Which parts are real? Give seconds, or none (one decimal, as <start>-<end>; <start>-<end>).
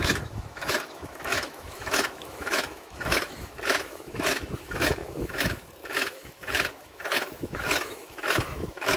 none